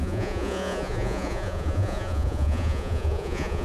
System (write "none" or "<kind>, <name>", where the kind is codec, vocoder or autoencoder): vocoder, Vocos